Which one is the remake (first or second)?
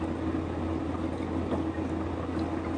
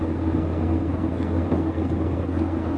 second